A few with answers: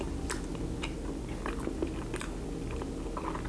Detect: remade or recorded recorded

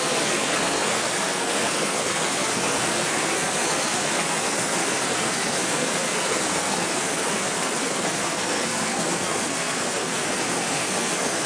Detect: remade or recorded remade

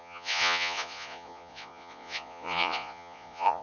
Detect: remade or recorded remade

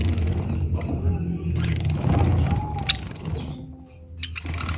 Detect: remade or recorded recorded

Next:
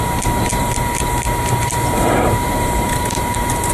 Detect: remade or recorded remade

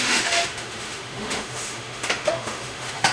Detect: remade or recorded remade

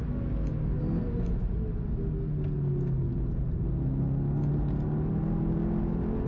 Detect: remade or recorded recorded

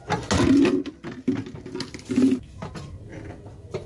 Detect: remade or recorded recorded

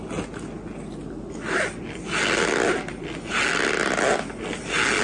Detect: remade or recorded recorded